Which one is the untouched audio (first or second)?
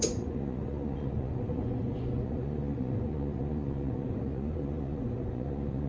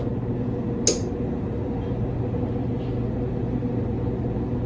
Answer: second